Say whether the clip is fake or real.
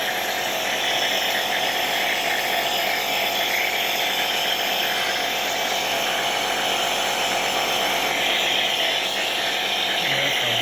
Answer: real